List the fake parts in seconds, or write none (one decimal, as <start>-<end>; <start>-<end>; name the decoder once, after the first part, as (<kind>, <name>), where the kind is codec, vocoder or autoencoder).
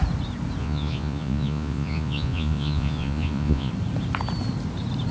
0.6-3.7 (vocoder, Vocos)